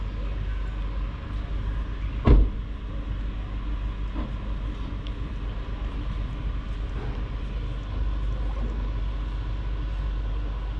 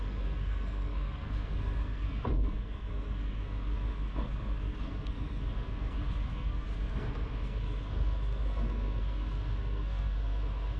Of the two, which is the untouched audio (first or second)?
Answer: first